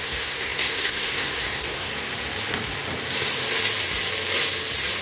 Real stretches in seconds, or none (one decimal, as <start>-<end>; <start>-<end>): 1.9-5.0